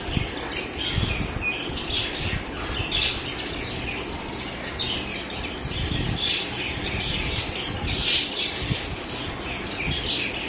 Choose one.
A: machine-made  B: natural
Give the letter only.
B